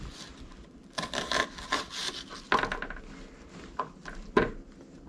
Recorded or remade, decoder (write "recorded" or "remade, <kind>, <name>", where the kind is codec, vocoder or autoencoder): recorded